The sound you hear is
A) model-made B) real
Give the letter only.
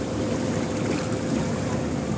B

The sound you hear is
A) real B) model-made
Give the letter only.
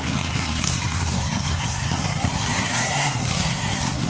B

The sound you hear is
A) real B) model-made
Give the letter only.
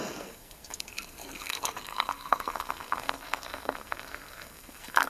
B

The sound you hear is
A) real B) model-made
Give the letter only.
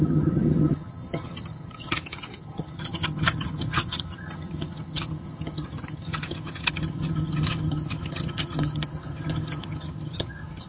B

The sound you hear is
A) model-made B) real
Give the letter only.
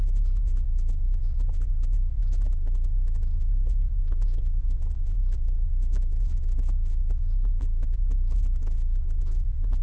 A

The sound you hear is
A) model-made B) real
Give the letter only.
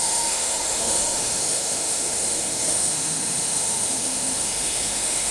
A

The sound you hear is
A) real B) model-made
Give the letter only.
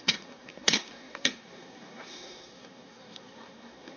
B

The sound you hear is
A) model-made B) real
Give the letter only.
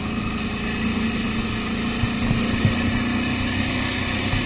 B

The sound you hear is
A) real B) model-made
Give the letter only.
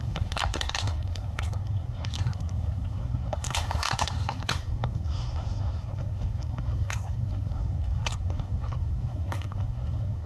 B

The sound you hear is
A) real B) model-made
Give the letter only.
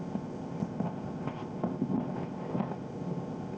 B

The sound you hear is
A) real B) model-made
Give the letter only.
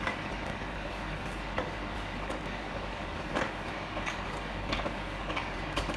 B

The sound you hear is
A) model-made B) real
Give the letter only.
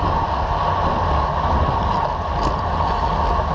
B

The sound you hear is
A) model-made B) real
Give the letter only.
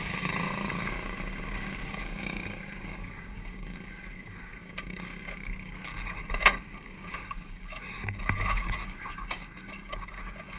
A